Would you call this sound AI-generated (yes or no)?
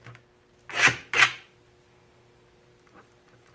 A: no